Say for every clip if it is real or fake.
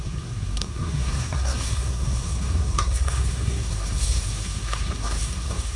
fake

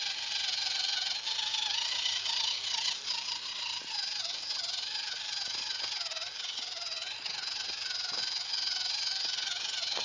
real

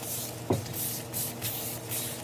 real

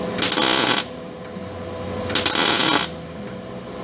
real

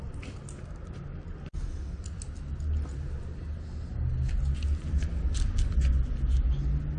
real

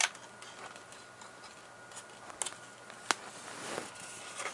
real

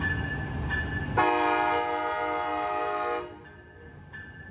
real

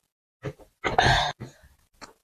real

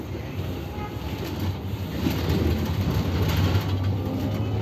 real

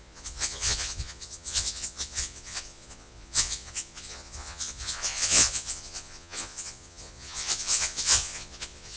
fake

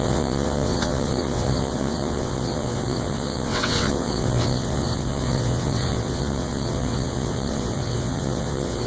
fake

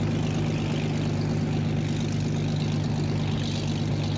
real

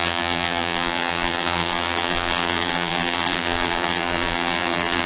fake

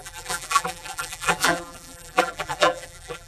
fake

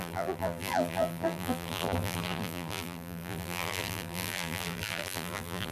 fake